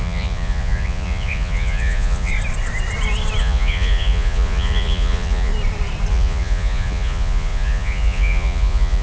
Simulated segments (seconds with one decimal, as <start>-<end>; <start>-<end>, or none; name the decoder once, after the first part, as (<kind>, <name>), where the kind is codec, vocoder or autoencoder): 0.0-2.3 (vocoder, Vocos); 3.4-5.5; 6.1-9.0